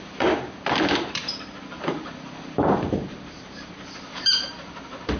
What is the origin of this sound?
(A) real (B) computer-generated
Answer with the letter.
B